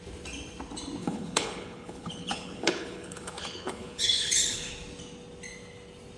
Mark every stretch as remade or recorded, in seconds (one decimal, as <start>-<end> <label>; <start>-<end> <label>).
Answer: 0.0-1.0 recorded; 1.0-4.7 remade; 4.7-6.2 recorded